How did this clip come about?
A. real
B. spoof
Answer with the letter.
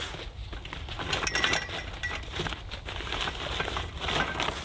A